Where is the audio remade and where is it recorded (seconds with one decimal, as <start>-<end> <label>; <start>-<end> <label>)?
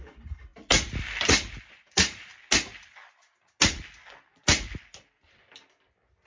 0.0-0.5 remade; 0.5-1.7 recorded; 1.7-2.3 remade; 2.3-6.3 recorded